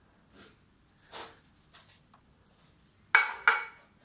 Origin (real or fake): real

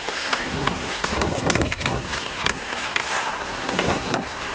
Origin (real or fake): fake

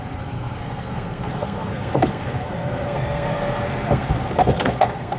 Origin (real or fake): fake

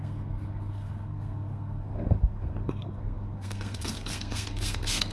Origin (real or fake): fake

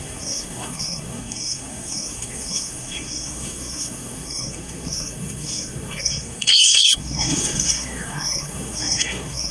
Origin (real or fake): fake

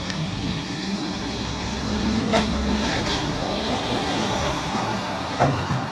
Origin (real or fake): fake